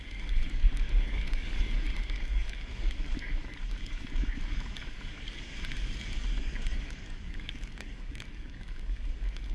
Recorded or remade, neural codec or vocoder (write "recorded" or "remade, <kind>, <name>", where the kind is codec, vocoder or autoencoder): remade, codec, DAC